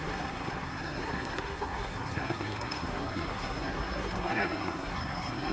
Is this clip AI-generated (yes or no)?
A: yes